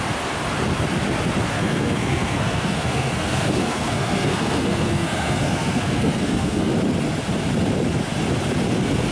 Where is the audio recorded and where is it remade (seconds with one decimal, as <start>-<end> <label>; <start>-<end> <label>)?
0.0-1.5 recorded; 1.5-6.7 remade; 6.7-9.1 recorded